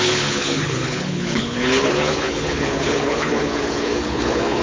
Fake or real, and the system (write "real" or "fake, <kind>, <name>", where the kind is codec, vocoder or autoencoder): fake, codec, HILCodec